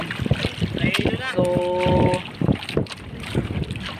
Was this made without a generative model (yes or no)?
yes